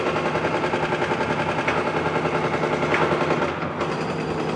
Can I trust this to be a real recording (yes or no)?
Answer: yes